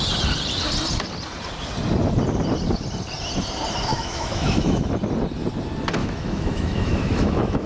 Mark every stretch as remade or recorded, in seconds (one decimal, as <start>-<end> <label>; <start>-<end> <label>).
0.0-3.9 recorded; 3.9-4.9 remade; 4.9-6.0 recorded; 6.0-7.7 remade